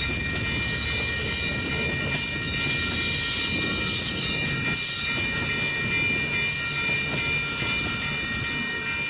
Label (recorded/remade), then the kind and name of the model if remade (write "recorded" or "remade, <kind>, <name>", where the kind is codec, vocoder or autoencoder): recorded